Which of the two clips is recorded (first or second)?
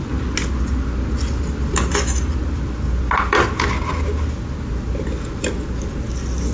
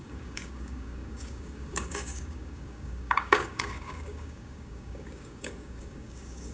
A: first